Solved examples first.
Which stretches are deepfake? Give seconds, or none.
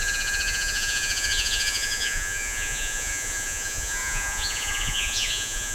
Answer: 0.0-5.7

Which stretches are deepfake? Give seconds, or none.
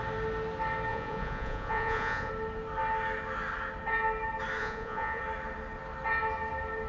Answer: 0.9-2.3; 4.6-5.2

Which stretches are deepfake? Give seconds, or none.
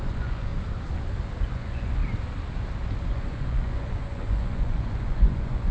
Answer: 0.0-0.5; 1.4-2.0; 3.1-5.7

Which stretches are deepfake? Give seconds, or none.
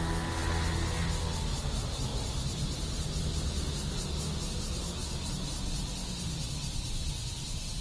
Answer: none